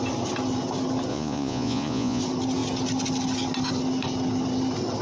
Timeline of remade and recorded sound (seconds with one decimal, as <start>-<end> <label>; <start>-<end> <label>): 0.0-1.1 recorded; 1.1-2.2 remade; 2.2-5.0 recorded

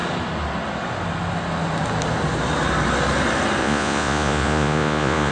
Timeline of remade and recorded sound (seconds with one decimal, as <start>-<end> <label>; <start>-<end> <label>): 0.0-3.6 recorded; 3.6-5.3 remade

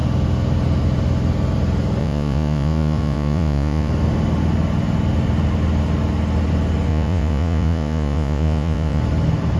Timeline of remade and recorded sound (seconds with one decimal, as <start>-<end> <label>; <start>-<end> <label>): 0.0-2.0 recorded; 2.0-3.9 remade; 3.9-6.9 recorded; 6.9-9.0 remade; 9.0-9.6 recorded

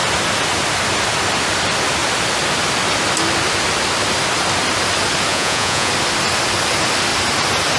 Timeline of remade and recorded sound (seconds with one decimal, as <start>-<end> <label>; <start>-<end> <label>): 0.0-5.3 recorded; 5.3-5.9 remade; 5.9-7.8 recorded

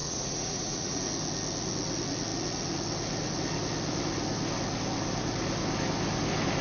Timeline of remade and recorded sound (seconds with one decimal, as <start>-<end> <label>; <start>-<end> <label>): 0.0-1.0 remade; 1.0-6.6 recorded

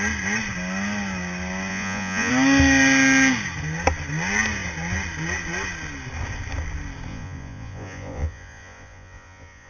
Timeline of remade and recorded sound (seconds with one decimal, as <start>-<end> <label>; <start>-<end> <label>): 0.0-1.7 recorded; 1.7-2.3 remade; 2.3-7.1 recorded; 7.1-9.7 remade

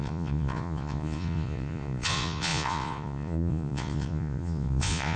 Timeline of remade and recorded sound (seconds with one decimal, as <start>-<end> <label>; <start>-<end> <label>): 0.0-5.2 remade

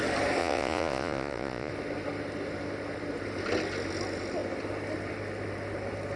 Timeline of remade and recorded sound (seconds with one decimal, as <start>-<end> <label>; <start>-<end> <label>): 0.0-0.4 recorded; 0.4-1.7 remade; 1.7-6.2 recorded